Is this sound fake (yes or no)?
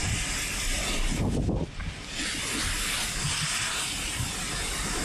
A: no